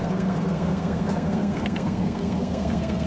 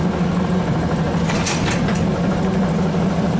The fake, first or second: first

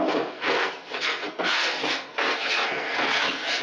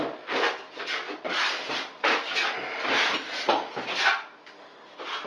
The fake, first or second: first